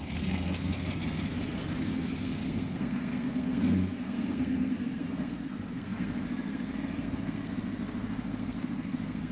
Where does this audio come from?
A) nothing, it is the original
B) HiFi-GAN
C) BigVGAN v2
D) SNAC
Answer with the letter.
D